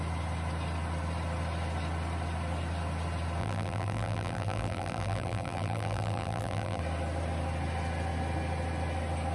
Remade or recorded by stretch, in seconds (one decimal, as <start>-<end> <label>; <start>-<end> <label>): 0.0-3.4 recorded; 3.4-6.8 remade; 6.8-9.3 recorded